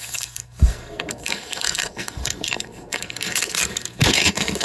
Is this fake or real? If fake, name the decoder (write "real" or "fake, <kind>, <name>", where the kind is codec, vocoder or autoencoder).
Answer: fake, codec, SNAC